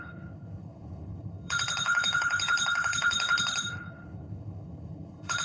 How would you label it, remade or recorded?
remade